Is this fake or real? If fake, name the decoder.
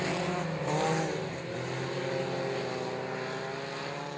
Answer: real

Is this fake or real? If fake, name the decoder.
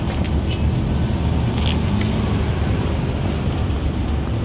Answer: real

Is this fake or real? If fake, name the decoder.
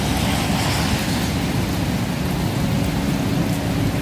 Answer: real